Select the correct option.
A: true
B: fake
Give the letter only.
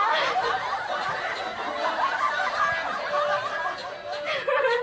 A